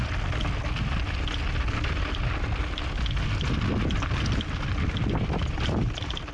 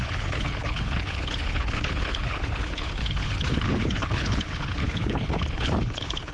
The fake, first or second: second